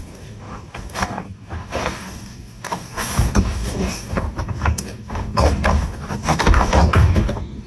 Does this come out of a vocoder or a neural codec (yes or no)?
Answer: yes